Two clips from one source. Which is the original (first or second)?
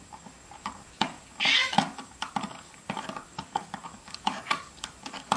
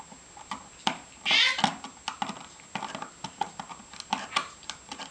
second